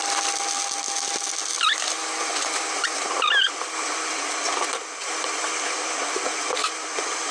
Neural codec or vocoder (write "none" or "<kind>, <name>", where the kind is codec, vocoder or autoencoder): none